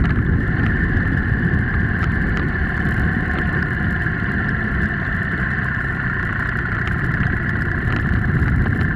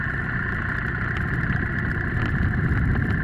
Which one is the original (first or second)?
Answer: second